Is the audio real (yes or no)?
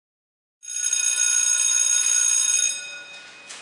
yes